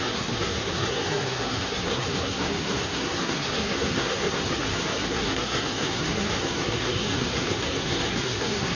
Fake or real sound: fake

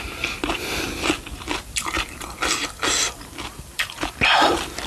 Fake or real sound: real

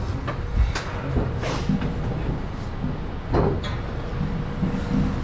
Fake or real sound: real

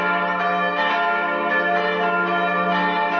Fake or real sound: real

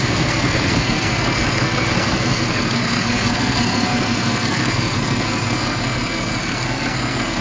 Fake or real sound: fake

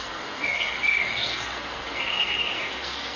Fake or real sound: fake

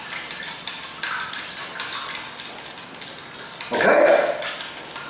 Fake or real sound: real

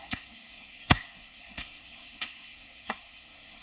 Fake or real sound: fake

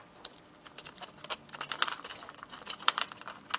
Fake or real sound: real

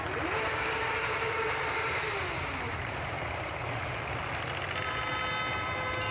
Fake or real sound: real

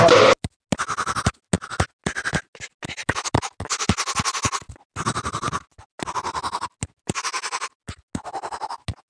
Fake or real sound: real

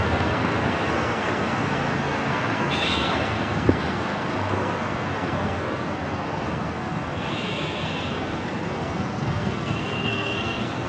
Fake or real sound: fake